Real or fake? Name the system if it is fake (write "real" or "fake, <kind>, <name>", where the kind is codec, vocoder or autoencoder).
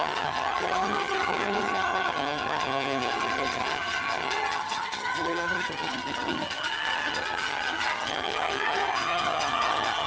fake, vocoder, HiFi-GAN